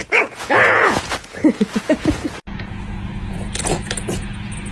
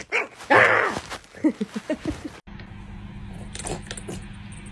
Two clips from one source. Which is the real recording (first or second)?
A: second